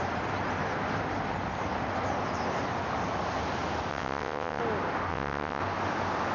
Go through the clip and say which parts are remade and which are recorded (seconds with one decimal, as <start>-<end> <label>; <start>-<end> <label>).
0.0-3.9 recorded; 3.9-4.6 remade; 4.6-5.1 recorded; 5.1-5.6 remade; 5.6-6.3 recorded